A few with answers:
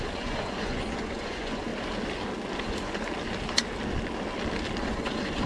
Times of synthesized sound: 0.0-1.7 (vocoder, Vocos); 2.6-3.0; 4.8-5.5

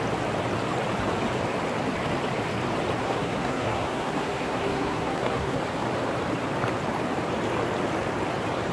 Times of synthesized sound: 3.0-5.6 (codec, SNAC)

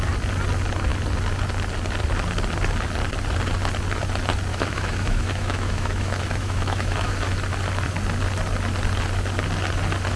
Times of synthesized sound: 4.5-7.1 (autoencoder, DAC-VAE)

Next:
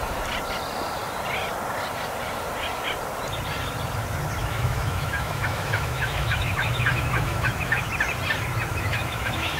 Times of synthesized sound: 4.4-7.9 (autoencoder, DAC-VAE); 8.7-9.6

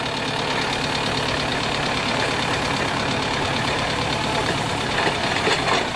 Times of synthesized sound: 1.5-4.9 (vocoder, BigVGAN v2)